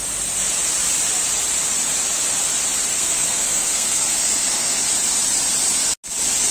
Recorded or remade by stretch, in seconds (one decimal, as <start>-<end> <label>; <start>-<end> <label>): 0.0-2.9 recorded; 2.9-4.8 remade; 4.8-6.5 recorded